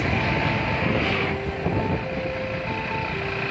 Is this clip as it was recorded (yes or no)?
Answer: yes